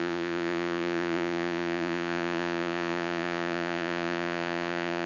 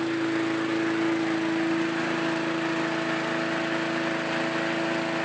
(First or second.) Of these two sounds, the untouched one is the second